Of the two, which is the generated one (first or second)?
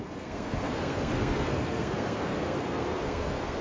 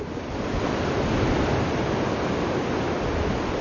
first